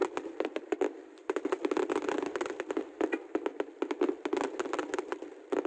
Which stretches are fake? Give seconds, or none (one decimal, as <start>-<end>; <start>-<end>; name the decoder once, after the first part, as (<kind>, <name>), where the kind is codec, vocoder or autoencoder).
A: 0.0-3.5 (vocoder, BigVGAN v2); 4.7-5.7